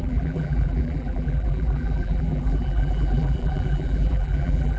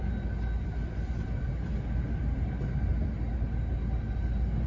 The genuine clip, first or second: second